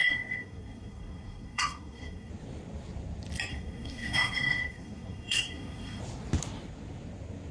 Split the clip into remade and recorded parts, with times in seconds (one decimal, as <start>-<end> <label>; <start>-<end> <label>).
0.0-2.3 remade; 2.3-3.5 recorded; 3.5-6.0 remade; 6.0-7.5 recorded